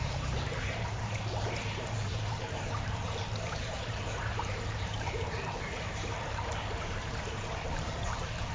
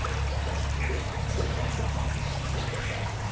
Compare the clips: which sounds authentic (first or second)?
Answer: second